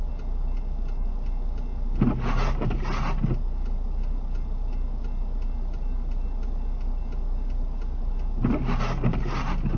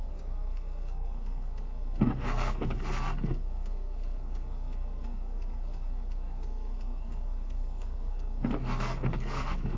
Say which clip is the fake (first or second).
second